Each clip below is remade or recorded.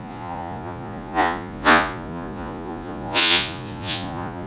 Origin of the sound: remade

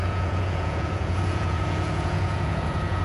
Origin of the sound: remade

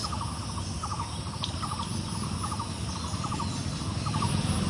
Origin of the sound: recorded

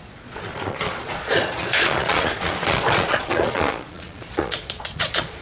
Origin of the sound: remade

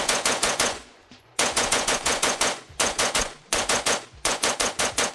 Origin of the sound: remade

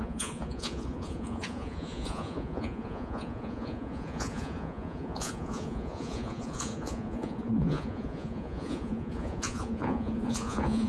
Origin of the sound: remade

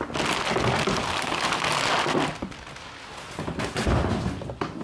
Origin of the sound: recorded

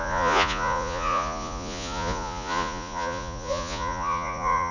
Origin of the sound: remade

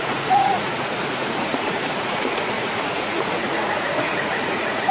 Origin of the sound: remade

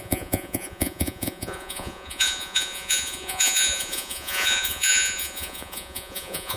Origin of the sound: remade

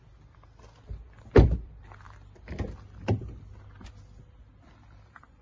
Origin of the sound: recorded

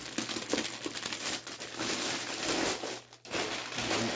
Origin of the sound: recorded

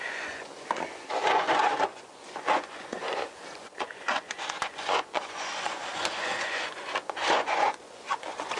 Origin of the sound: remade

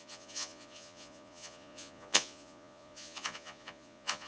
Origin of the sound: remade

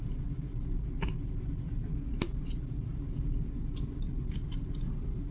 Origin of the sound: recorded